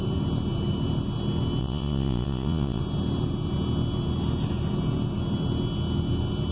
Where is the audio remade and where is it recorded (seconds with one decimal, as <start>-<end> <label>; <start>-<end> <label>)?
0.0-1.6 recorded; 1.6-2.8 remade; 2.8-6.5 recorded

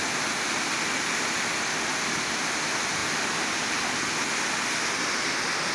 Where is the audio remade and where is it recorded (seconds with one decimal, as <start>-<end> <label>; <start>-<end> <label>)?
0.0-5.7 recorded

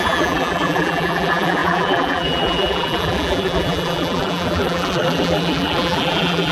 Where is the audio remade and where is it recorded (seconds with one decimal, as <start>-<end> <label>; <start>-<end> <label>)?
0.0-6.5 remade

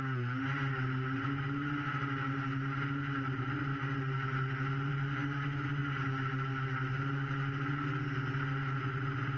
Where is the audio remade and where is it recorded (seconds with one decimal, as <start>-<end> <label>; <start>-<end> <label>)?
0.0-9.4 recorded